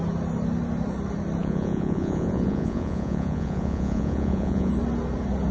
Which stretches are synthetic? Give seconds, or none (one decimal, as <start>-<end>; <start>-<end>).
1.4-4.7